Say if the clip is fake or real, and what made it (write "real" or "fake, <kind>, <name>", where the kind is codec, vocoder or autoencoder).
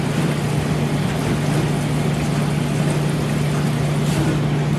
real